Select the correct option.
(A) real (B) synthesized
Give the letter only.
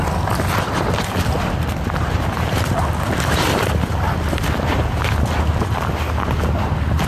A